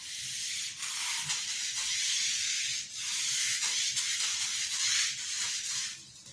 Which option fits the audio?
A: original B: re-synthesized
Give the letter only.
A